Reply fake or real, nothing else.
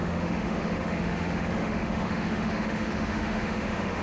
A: fake